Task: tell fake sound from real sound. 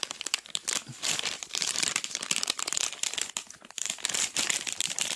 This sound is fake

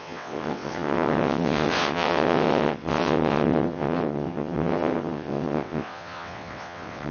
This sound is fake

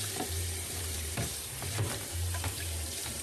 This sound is fake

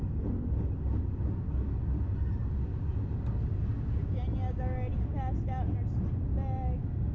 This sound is real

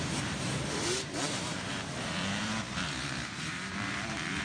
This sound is fake